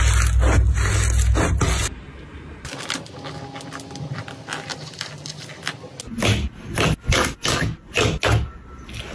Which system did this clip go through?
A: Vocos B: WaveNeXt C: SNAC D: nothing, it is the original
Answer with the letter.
D